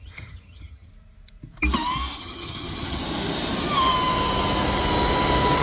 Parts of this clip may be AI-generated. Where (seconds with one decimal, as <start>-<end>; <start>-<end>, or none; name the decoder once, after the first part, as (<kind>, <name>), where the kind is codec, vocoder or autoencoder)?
0.0-0.9 (vocoder, HiFi-GAN); 2.2-3.0